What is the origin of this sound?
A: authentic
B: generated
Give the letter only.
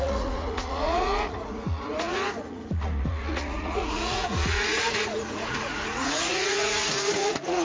B